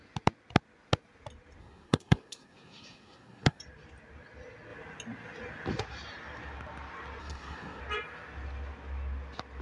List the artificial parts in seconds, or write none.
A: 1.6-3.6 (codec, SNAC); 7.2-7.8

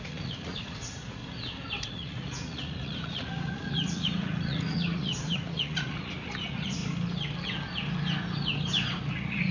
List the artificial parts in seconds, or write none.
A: 0.0-1.2 (vocoder, Vocos); 1.8-6.8; 9.1-9.5

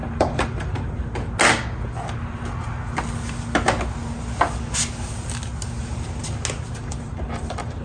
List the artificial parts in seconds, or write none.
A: 0.0-1.1 (vocoder, BigVGAN v2); 5.8-6.2; 6.8-7.8

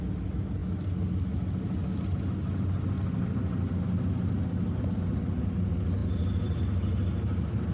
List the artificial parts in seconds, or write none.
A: 6.0-6.6 (vocoder, BigVGAN v2)